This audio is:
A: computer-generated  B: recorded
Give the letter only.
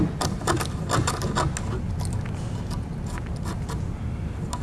B